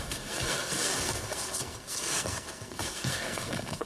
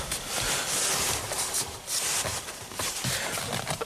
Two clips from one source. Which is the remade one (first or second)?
first